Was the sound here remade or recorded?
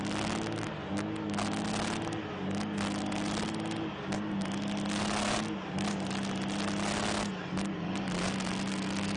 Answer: recorded